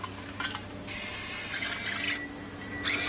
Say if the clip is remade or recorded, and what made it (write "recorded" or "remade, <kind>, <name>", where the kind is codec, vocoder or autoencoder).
recorded